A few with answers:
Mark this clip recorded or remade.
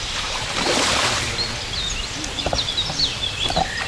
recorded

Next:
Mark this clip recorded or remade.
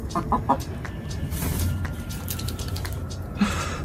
remade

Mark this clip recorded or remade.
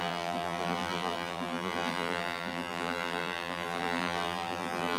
remade